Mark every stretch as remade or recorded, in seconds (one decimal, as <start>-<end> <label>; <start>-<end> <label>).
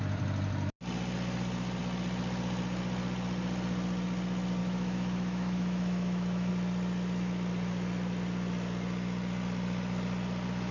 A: 0.0-4.6 recorded; 4.6-6.5 remade; 6.5-10.7 recorded